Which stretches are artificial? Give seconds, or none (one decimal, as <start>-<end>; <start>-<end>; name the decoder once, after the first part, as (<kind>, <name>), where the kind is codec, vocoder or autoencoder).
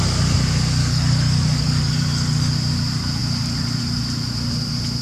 0.8-2.5 (codec, DAC)